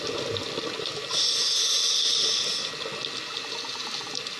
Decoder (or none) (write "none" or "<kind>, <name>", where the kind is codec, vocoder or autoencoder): none